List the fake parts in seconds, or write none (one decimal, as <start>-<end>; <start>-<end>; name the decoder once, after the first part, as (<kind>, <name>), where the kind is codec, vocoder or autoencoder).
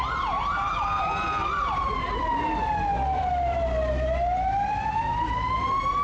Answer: 0.6-2.2 (vocoder, BigVGAN v2); 2.9-5.5